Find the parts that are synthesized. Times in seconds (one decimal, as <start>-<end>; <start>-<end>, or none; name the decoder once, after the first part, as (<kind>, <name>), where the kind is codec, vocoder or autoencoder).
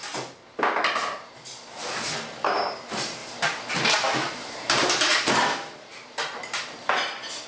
3.2-5.2 (vocoder, BigVGAN v2); 5.9-7.5